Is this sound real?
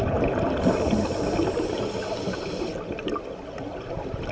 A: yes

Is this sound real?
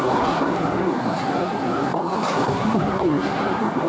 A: no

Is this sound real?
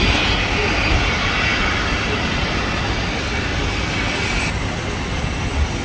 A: yes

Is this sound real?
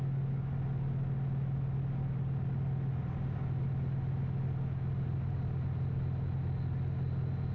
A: yes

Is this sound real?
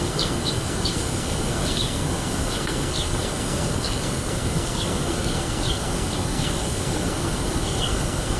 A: no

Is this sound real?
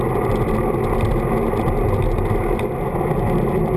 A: yes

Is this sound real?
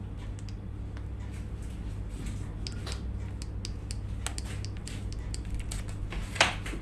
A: yes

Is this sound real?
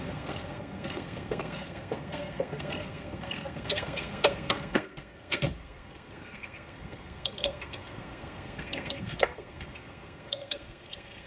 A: no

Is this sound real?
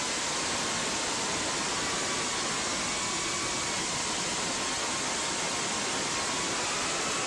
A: yes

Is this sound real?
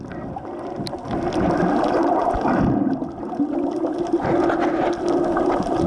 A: yes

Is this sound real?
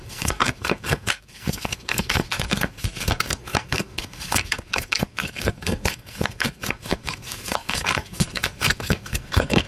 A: no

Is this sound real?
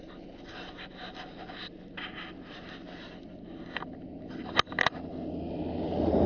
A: yes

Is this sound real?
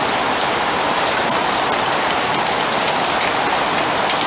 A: yes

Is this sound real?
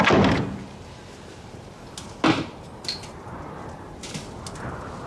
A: yes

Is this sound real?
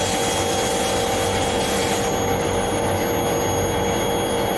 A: yes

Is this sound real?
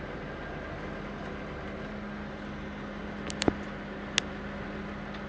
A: yes